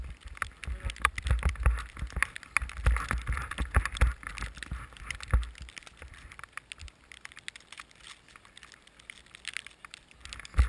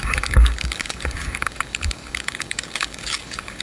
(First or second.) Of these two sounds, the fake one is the second